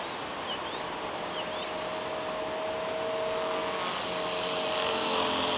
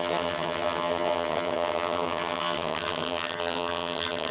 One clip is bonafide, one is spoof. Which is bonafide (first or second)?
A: first